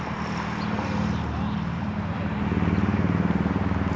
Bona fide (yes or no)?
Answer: yes